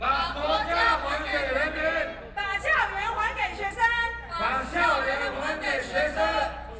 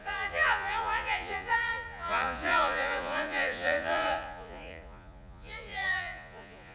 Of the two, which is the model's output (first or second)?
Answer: second